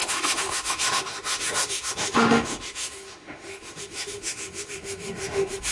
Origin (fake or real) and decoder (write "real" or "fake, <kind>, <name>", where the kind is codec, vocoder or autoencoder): fake, autoencoder, DAC-VAE